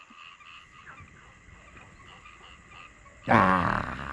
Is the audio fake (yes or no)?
no